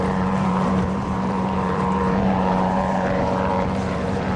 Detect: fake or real fake